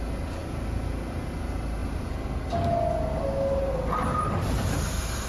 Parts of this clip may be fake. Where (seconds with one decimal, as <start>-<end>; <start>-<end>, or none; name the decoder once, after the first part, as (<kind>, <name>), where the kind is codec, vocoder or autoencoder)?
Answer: none